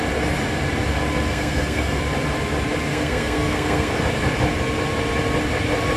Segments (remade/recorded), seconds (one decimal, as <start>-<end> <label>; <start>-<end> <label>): 0.0-1.3 recorded; 1.3-2.0 remade; 2.0-2.9 recorded; 2.9-3.9 remade; 3.9-6.0 recorded